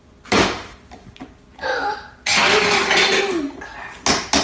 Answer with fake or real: real